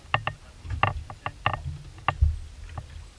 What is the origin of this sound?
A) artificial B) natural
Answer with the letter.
B